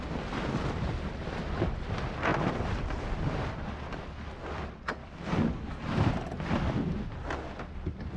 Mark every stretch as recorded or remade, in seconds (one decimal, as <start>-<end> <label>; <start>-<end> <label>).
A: 0.0-5.0 recorded; 5.0-6.1 remade; 6.1-8.2 recorded